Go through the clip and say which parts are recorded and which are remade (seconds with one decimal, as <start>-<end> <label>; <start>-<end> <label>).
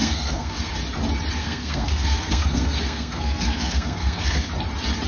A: 0.0-0.7 remade; 0.7-1.4 recorded; 1.4-4.5 remade; 4.5-5.1 recorded